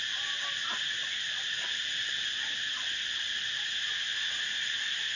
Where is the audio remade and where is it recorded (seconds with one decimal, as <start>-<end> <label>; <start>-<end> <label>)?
0.0-0.7 recorded; 0.7-2.1 remade; 2.1-5.2 recorded